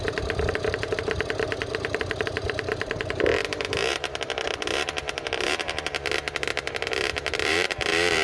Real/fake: fake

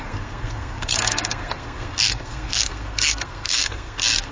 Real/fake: fake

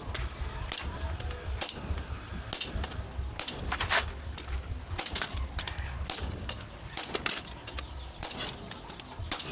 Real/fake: real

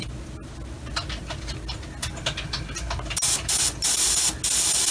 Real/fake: real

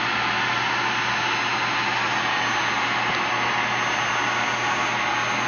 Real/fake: real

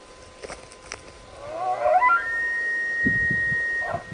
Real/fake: real